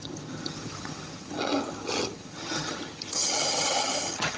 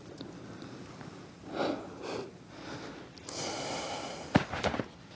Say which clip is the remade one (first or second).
first